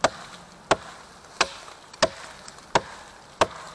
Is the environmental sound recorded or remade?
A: recorded